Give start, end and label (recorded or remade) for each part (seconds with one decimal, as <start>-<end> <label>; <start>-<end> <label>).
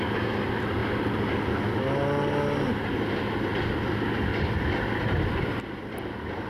0.0-6.5 recorded